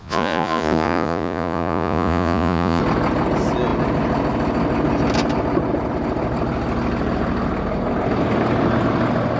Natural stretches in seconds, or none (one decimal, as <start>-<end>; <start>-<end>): 2.8-9.4